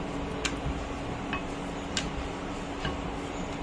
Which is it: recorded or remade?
recorded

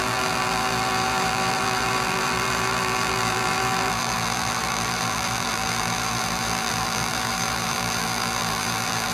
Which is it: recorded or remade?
remade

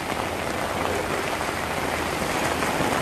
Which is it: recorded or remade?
recorded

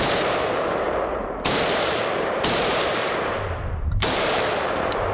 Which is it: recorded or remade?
remade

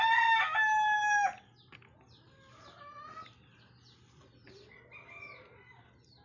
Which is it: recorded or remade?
recorded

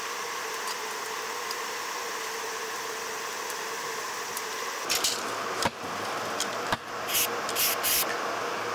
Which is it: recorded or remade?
recorded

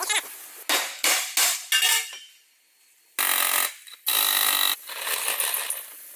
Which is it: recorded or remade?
recorded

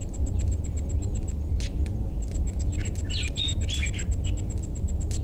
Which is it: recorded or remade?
recorded